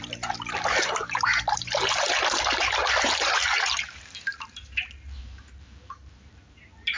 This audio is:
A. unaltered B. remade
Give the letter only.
B